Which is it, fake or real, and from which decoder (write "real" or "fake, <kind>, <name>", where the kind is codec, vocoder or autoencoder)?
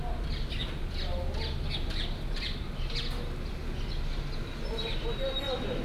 real